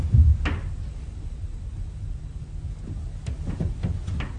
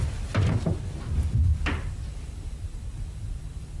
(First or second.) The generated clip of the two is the second